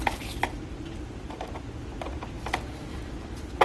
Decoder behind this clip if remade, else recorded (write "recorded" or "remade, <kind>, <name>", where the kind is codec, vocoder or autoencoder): recorded